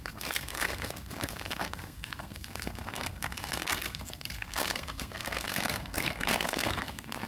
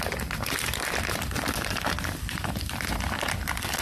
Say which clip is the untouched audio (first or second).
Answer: second